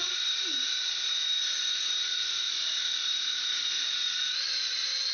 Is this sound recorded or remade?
remade